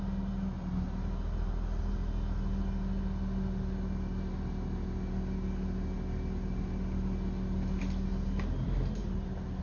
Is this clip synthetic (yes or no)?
no